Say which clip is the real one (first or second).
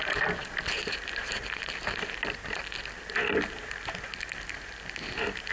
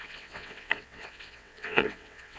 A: first